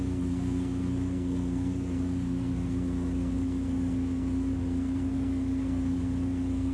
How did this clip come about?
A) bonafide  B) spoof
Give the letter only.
B